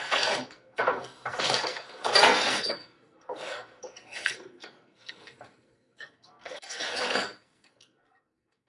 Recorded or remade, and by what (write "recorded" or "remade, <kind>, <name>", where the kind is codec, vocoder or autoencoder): remade, codec, SNAC